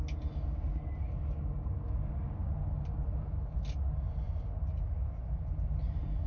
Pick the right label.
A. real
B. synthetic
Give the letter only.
A